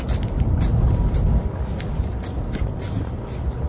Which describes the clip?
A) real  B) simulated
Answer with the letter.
A